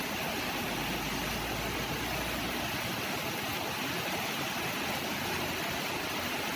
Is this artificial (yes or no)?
no